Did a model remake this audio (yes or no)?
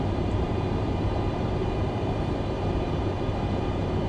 yes